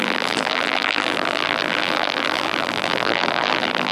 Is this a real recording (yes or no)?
no